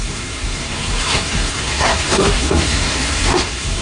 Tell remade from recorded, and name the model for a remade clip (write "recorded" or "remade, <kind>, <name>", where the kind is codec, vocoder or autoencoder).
remade, codec, SNAC